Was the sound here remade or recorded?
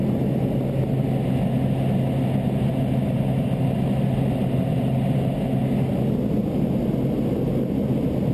recorded